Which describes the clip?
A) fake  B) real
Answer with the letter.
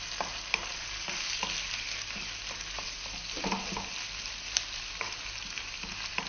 B